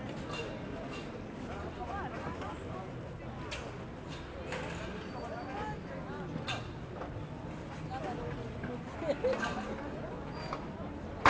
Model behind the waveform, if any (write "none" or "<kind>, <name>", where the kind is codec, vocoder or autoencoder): none